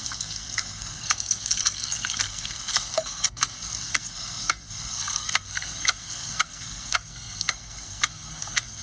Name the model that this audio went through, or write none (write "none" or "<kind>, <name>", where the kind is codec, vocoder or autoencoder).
codec, SNAC